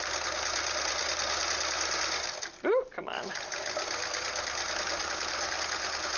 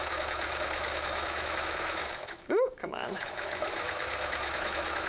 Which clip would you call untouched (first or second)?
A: first